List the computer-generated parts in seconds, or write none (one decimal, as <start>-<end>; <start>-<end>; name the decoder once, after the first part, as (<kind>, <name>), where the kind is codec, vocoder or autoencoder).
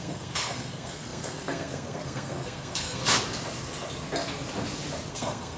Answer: 0.0-3.0 (codec, SNAC); 5.1-5.6